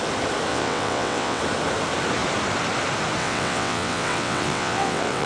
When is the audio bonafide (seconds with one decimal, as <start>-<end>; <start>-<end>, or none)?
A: 0.0-0.5; 1.4-3.2